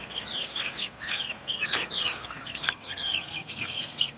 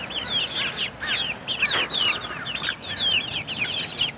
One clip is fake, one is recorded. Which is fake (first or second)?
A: first